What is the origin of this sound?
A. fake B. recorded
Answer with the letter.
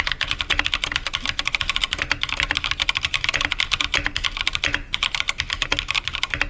B